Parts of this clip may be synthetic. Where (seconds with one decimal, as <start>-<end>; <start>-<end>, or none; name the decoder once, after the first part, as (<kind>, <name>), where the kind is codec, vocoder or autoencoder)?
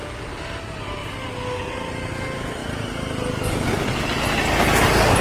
none